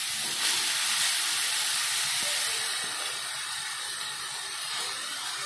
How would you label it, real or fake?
real